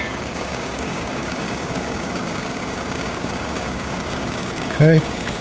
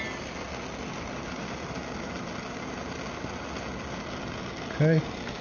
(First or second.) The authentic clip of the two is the second